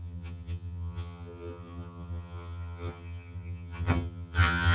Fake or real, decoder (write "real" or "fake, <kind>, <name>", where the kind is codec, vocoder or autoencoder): fake, vocoder, HiFi-GAN